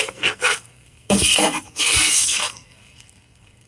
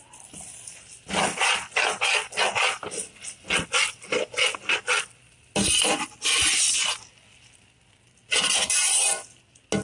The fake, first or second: first